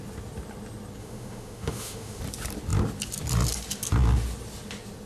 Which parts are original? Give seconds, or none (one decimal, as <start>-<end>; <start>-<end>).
0.0-1.0; 2.2-5.1